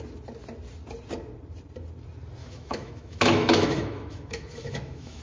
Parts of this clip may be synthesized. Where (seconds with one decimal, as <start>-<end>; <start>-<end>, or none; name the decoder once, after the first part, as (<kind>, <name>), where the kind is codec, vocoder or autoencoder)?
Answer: 2.4-5.2 (autoencoder, DAC-VAE)